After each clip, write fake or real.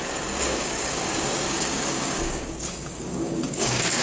fake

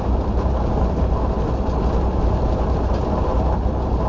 real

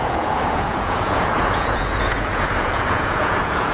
fake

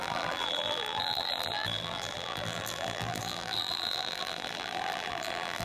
fake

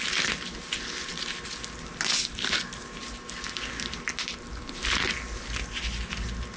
real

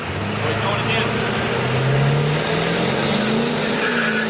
real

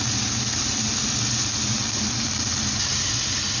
real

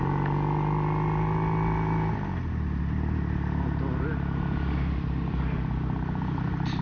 real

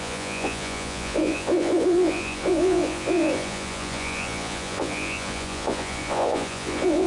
fake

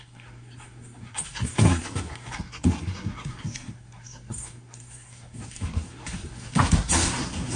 fake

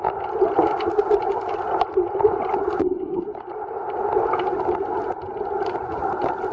real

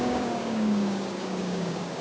fake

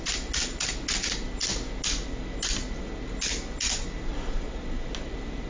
real